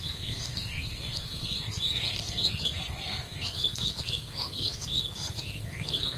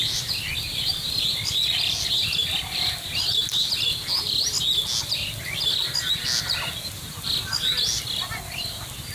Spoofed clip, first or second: first